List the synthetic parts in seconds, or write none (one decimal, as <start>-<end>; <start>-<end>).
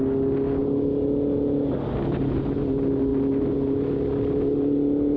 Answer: none